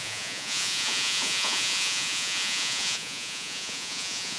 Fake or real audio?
fake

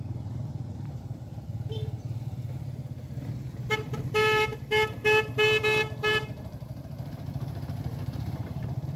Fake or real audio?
fake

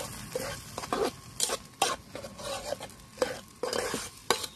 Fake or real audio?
real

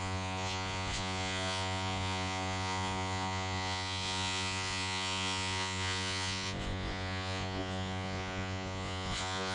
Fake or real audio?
fake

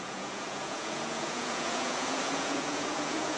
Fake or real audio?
fake